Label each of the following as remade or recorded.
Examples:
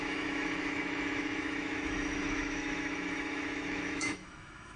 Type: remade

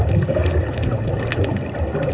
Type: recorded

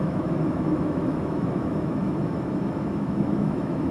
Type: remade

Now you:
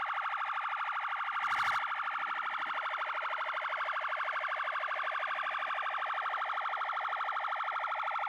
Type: recorded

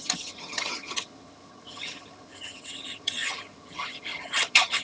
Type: remade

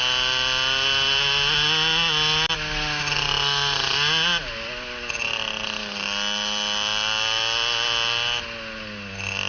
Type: recorded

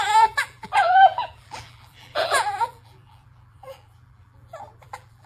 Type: remade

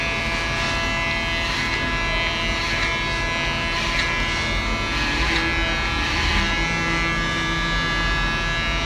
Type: recorded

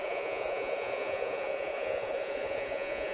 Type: remade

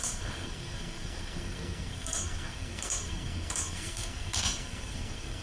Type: remade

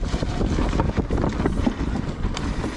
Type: recorded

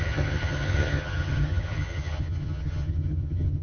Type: remade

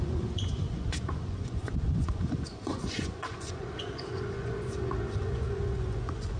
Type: remade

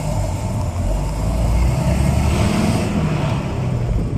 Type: recorded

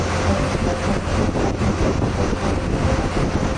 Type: recorded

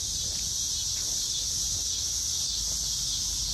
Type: recorded